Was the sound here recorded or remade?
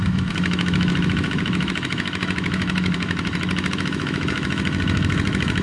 remade